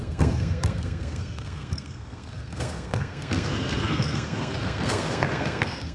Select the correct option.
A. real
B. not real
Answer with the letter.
B